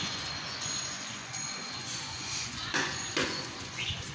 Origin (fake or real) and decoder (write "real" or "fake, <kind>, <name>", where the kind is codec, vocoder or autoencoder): fake, vocoder, Vocos